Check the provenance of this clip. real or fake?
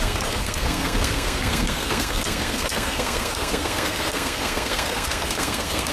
fake